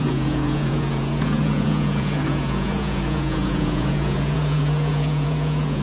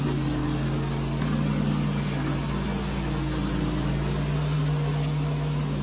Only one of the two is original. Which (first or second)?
second